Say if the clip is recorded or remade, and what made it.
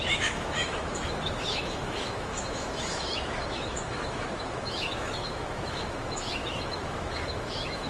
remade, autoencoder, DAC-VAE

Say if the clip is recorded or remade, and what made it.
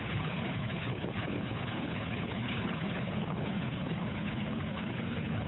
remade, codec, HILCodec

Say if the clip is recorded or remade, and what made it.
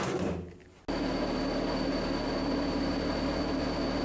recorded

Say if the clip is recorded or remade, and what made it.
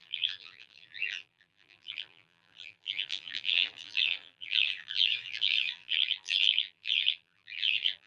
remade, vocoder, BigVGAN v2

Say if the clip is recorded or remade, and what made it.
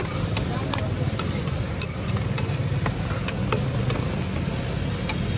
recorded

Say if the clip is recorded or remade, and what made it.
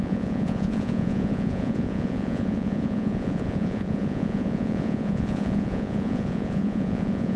remade, vocoder, Vocos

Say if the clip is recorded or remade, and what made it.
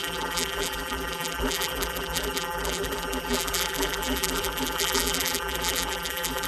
remade, vocoder, BigVGAN v2